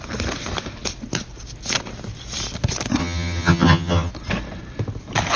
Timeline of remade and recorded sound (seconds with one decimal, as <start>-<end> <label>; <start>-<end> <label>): 0.0-3.0 recorded; 3.0-4.1 remade; 4.1-5.4 recorded